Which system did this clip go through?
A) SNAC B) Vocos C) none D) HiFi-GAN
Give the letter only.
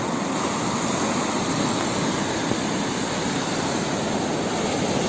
C